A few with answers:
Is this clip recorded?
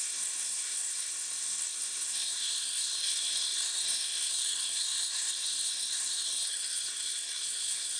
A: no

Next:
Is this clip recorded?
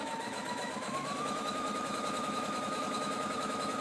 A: no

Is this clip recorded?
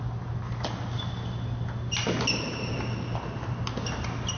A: yes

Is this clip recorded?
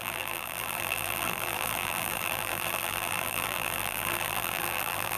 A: no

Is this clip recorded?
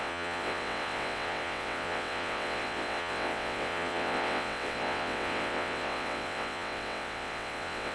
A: no